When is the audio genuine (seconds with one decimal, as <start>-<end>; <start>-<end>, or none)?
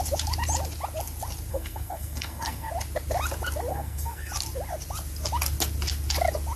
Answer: 0.0-1.5; 2.7-3.7; 4.3-6.6